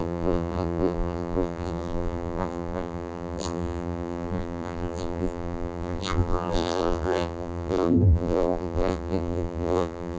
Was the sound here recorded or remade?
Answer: remade